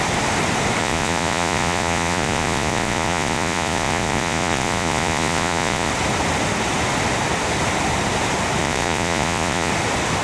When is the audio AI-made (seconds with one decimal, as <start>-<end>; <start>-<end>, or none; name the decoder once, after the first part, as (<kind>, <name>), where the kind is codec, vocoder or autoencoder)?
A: 0.8-5.9 (vocoder, Vocos); 8.6-9.7